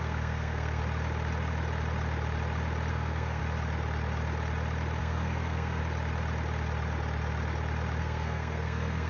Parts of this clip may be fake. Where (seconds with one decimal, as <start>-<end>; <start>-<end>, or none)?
0.0-0.8; 2.9-3.4; 5.0-5.8; 8.0-9.1